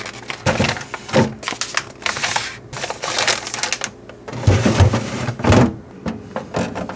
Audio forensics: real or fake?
real